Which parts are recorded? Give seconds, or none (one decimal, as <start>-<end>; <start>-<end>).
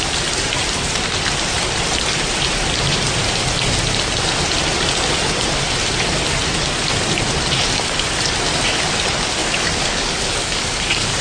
0.0-9.4